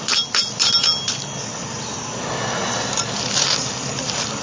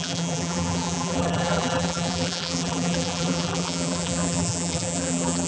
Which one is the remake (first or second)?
second